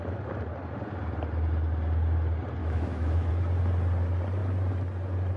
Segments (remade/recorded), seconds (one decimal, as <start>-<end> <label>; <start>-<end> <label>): 0.0-2.6 recorded; 2.6-3.3 remade; 3.3-5.4 recorded